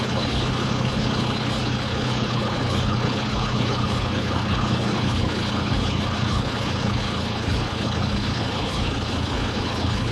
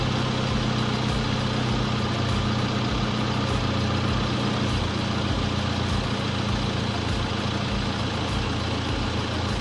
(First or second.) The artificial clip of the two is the first